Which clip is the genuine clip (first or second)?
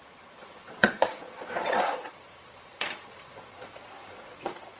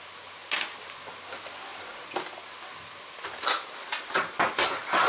second